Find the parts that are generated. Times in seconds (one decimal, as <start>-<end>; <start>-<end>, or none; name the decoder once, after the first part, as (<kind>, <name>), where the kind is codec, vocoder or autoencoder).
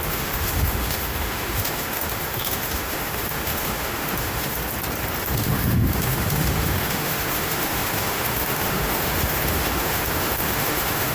0.0-4.6 (autoencoder, DAC-VAE); 5.2-11.1